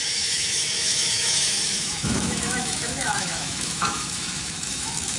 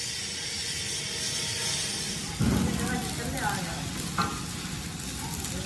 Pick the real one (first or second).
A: second